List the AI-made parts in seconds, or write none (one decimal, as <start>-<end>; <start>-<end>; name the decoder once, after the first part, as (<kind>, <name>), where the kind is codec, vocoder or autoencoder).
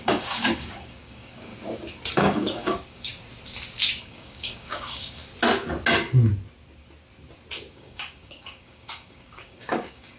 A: 0.0-1.5 (codec, DAC); 2.1-3.1; 4.0-5.2; 7.7-10.2